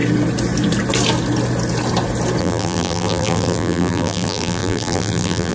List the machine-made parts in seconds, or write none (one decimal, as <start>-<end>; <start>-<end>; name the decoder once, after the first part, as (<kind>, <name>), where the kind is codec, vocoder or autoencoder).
2.4-5.5 (vocoder, BigVGAN v2)